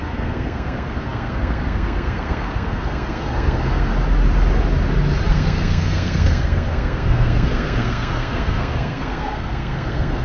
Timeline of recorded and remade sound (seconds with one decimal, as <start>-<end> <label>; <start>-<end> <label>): 0.0-3.9 remade; 3.9-5.3 recorded; 5.3-10.2 remade